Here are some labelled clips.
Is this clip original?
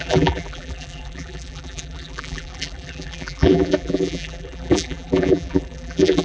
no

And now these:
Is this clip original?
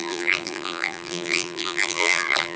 no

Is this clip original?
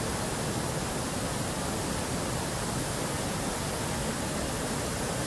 yes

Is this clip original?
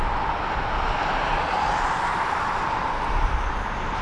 yes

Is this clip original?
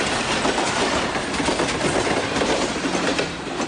yes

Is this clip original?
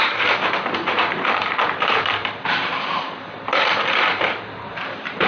no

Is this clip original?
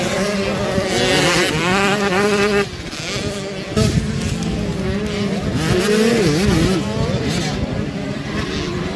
yes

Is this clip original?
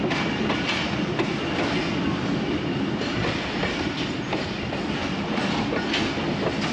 yes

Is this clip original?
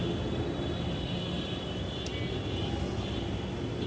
yes